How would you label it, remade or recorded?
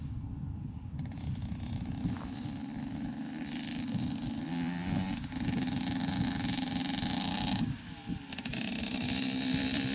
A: recorded